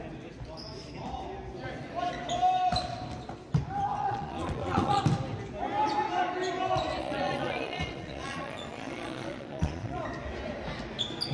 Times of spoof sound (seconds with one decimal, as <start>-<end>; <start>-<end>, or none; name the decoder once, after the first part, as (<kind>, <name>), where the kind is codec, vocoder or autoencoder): 4.0-5.0 (vocoder, Vocos); 7.0-10.0